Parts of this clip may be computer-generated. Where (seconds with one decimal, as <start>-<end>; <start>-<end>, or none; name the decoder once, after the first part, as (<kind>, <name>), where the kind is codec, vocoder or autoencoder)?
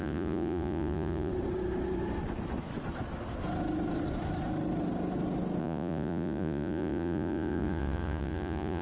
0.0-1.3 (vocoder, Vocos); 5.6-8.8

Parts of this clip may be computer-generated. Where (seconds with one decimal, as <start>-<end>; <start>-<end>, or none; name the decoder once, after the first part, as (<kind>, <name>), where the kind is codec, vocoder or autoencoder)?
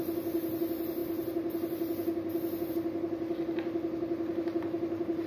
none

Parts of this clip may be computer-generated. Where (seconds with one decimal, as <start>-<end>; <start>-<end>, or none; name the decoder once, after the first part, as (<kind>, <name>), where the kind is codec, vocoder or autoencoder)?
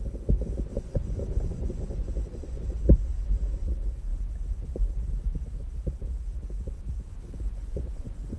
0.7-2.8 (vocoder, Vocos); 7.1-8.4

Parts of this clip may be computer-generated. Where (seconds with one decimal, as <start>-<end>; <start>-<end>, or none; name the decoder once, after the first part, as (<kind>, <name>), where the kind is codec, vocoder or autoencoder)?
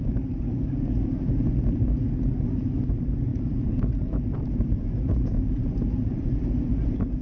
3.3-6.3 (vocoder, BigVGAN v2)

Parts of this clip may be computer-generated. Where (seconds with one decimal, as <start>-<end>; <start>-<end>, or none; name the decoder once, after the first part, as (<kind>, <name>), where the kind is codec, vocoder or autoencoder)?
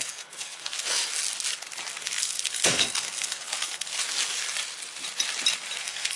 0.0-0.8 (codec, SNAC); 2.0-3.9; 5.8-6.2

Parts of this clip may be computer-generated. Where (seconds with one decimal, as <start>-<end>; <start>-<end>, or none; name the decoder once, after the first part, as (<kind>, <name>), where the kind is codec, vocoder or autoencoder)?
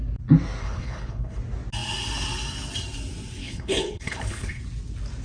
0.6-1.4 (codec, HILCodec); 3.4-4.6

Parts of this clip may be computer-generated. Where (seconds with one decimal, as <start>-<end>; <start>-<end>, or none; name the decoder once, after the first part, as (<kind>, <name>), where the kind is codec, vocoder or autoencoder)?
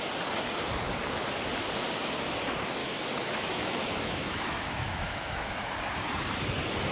2.8-5.6 (autoencoder, DAC-VAE)